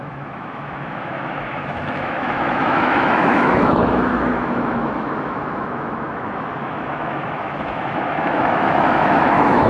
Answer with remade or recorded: remade